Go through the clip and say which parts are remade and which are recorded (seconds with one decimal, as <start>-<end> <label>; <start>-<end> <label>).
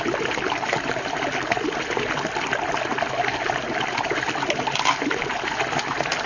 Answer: 0.0-2.9 remade; 2.9-5.3 recorded; 5.3-6.3 remade